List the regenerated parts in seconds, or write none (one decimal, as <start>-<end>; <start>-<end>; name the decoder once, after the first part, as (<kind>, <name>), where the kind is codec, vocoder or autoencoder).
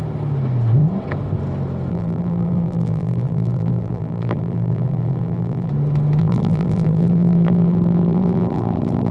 1.9-5.7 (vocoder, BigVGAN v2); 6.2-9.1